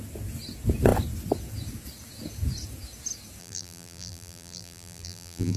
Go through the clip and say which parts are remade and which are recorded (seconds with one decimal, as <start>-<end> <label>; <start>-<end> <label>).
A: 0.0-3.4 recorded; 3.4-5.6 remade